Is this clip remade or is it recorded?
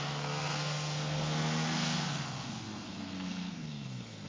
remade